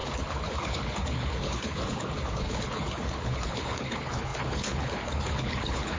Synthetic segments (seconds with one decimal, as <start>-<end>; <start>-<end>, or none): 0.0-6.0